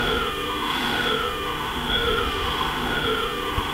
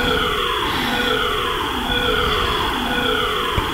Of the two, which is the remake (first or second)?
first